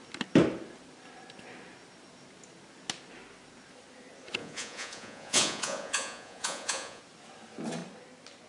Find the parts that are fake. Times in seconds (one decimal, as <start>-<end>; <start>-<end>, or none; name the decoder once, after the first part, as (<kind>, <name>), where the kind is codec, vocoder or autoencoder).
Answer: 4.4-7.0 (vocoder, Vocos)